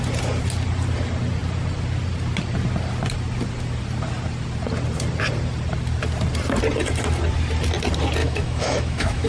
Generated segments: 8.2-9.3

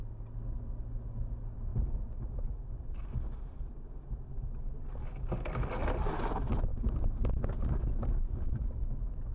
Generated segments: none

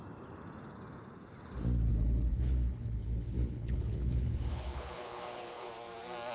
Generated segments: 1.9-5.7

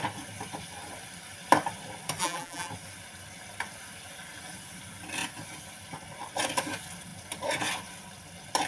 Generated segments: 2.2-2.7

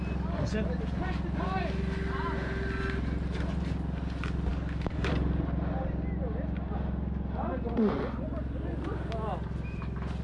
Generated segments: 4.5-5.1

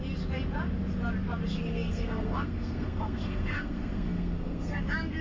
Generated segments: 1.7-4.8

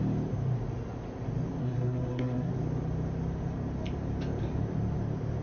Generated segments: 1.6-2.5

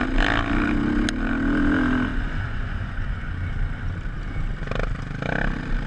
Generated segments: 2.1-3.3